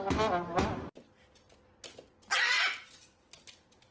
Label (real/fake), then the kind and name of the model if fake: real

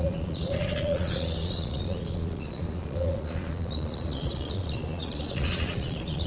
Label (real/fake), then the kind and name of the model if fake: fake, vocoder, Vocos